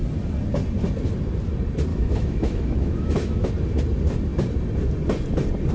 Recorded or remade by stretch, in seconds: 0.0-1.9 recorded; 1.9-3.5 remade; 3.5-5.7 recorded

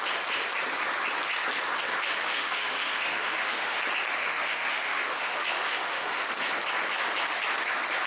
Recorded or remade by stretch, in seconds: 0.0-2.2 recorded; 2.2-3.8 remade; 3.8-4.2 recorded; 4.2-6.3 remade; 6.3-8.1 recorded